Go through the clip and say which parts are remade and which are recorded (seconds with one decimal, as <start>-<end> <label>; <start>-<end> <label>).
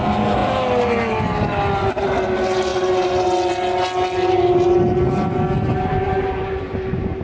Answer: 0.0-7.2 recorded